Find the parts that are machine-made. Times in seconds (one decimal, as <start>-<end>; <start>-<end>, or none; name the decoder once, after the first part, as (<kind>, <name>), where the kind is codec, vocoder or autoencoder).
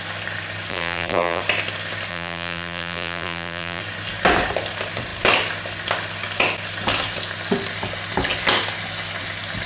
0.7-1.4 (vocoder, BigVGAN v2); 2.1-3.8